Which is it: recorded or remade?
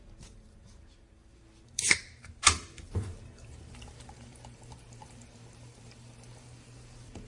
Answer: remade